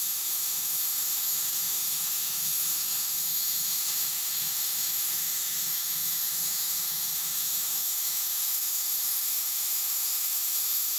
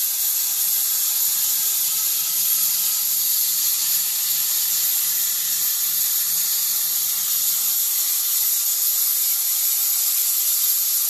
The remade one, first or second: first